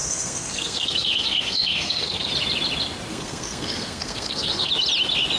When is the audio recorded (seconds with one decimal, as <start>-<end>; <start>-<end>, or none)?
2.3-3.1; 4.7-5.4